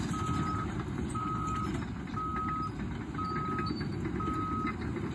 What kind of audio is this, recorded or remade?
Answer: recorded